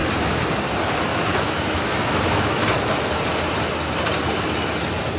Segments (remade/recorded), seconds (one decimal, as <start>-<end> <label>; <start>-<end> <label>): 0.0-1.1 recorded; 1.1-2.7 remade; 2.7-5.2 recorded